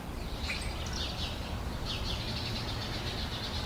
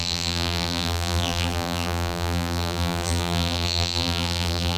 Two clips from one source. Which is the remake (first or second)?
second